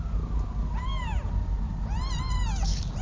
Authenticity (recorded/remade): recorded